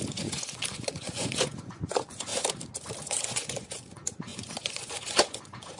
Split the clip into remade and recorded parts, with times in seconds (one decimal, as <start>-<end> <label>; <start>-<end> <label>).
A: 0.0-2.3 remade; 2.3-3.0 recorded; 3.0-5.8 remade